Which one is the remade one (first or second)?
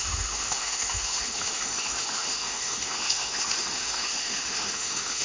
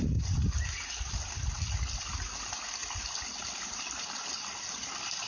first